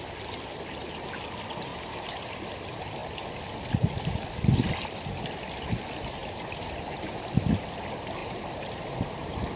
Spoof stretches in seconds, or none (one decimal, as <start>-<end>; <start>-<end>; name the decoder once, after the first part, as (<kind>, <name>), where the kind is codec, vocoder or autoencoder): 1.7-2.4 (vocoder, BigVGAN v2); 6.2-7.3; 8.2-9.6